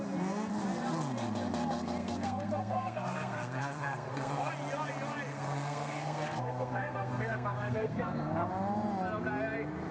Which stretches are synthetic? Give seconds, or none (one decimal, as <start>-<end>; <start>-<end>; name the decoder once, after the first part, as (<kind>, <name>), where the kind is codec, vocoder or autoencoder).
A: 2.0-4.5 (codec, SNAC); 5.3-8.5